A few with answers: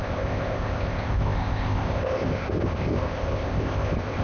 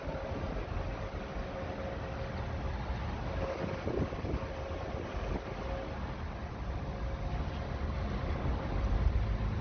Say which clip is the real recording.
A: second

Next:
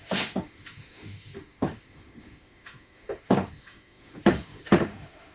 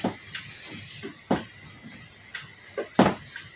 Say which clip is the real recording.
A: second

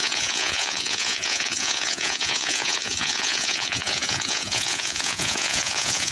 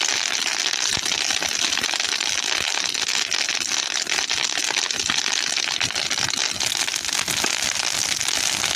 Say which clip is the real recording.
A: second